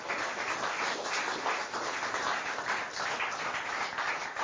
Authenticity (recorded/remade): recorded